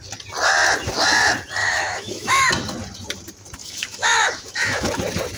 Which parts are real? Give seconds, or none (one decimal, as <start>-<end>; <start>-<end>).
0.0-1.6; 2.5-3.6; 4.9-5.4